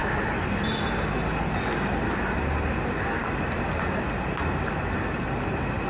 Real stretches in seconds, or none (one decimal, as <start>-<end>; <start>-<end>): 0.0-5.9